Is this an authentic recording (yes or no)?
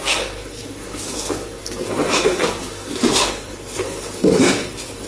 no